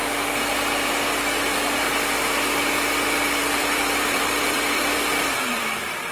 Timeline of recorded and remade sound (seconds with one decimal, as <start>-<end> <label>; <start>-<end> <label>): 0.0-3.4 recorded; 3.4-5.6 remade; 5.6-6.1 recorded